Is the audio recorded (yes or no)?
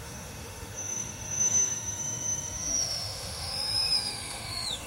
no